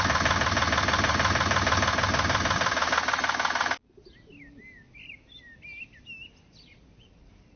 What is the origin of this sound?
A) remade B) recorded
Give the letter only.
B